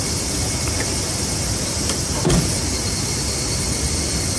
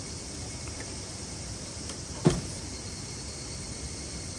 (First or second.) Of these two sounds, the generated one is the second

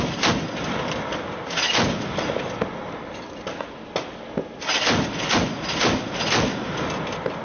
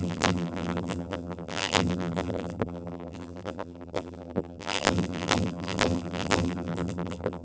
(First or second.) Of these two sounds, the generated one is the second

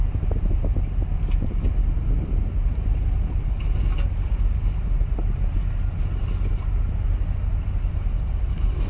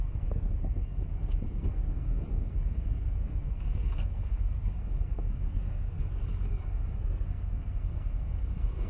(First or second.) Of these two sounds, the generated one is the second